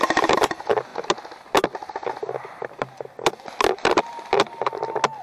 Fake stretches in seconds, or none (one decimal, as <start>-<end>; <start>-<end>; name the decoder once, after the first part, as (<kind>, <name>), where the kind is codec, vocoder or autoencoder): none